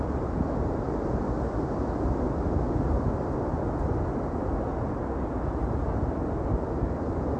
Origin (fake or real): real